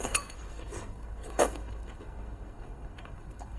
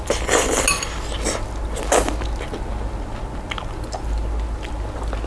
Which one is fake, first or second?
first